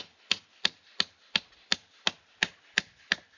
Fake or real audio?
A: real